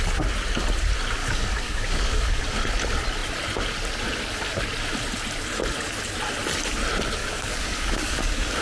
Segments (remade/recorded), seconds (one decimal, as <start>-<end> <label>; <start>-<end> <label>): 0.0-1.2 recorded; 1.2-2.4 remade; 2.4-7.2 recorded; 7.2-8.6 remade